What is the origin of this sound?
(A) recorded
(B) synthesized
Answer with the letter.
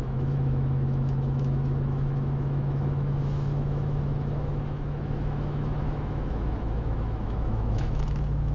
B